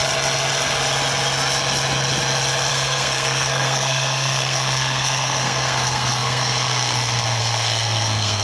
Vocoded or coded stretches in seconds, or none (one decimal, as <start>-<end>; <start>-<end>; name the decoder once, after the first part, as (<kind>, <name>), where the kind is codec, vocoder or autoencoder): 2.7-8.4 (codec, SNAC)

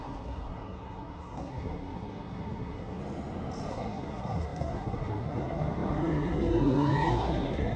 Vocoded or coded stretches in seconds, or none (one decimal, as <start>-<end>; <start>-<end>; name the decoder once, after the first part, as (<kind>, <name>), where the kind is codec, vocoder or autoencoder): 0.0-3.0 (codec, SNAC); 3.7-7.8

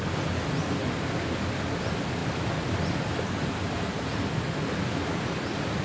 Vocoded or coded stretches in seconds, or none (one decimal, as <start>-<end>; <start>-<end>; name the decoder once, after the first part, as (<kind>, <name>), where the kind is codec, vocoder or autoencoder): none